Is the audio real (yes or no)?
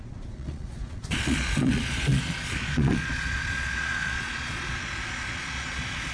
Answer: no